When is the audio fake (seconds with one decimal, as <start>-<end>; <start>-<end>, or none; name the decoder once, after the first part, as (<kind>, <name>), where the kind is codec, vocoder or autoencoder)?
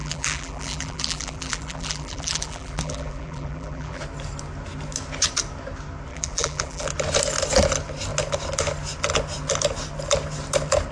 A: 0.0-4.0 (vocoder, BigVGAN v2); 6.1-6.9